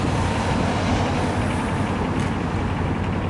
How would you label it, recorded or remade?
recorded